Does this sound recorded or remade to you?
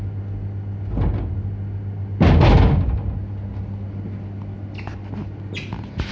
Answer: recorded